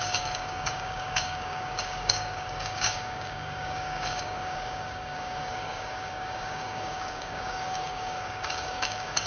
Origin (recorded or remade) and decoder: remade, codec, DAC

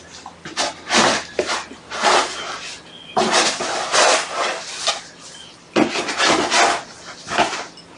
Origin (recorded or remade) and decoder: recorded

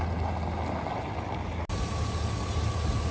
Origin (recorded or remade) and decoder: recorded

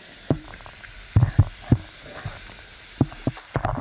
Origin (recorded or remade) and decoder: remade, vocoder, BigVGAN v2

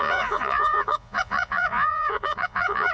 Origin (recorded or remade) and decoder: remade, vocoder, Vocos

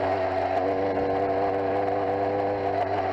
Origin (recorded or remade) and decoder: recorded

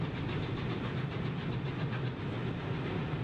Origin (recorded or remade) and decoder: recorded